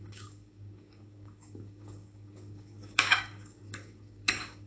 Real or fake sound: fake